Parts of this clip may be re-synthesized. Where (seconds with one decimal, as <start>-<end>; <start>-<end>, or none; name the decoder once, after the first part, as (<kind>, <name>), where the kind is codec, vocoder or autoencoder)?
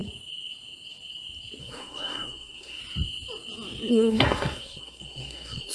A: 1.6-2.8 (codec, SNAC); 3.9-5.7